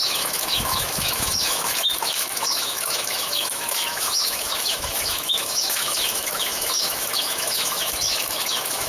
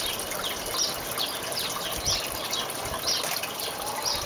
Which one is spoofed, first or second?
first